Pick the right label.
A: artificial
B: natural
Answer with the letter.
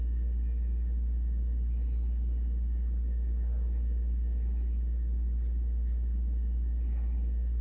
B